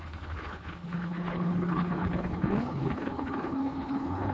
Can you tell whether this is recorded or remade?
remade